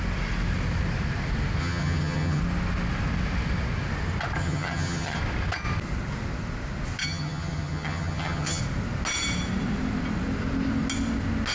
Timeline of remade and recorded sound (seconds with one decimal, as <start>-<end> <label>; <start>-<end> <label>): 0.0-1.6 recorded; 1.6-2.4 remade; 2.4-4.4 recorded; 4.4-5.2 remade; 5.2-7.0 recorded; 7.0-8.6 remade; 8.6-11.5 recorded